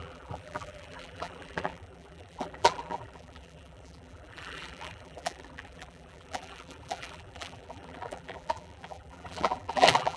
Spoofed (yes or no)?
yes